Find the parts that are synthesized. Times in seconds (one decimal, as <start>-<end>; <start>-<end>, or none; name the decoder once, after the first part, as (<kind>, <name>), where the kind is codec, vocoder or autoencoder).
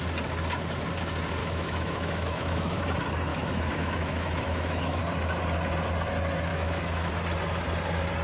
1.4-2.8 (autoencoder, DAC-VAE); 3.3-5.0; 6.5-7.1